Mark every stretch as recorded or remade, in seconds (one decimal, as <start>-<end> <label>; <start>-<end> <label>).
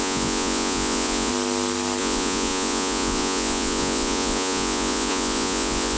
0.0-1.3 remade; 1.3-2.0 recorded; 2.0-6.0 remade